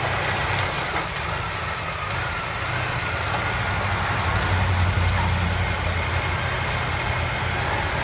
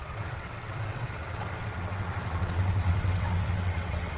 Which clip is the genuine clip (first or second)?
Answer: first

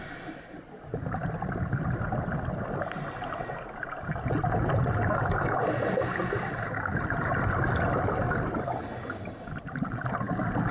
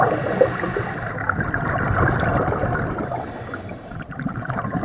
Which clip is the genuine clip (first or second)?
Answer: first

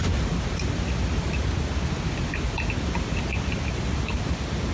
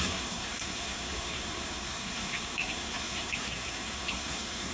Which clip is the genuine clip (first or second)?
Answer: first